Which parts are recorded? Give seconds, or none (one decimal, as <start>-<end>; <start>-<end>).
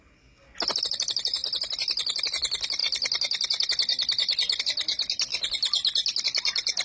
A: 0.0-6.8